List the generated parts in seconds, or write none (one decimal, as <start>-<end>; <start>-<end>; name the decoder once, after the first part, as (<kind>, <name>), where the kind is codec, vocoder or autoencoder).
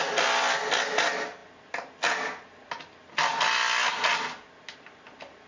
none